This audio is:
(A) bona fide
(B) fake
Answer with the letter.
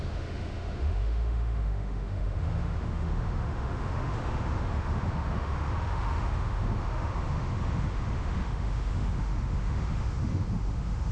B